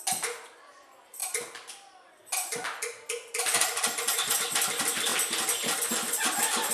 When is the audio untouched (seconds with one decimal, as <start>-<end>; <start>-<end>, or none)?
0.0-6.7